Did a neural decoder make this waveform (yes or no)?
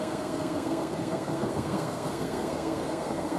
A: yes